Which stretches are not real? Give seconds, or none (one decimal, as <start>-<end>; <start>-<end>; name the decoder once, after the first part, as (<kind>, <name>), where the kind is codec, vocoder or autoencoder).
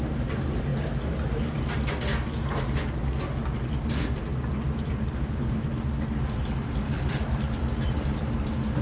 0.0-0.7 (vocoder, BigVGAN v2); 3.9-5.7; 6.4-8.8